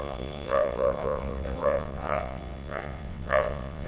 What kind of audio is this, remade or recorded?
remade